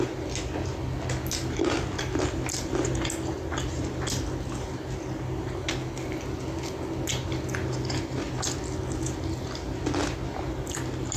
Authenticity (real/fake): real